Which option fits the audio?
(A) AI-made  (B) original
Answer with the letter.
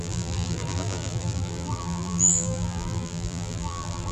A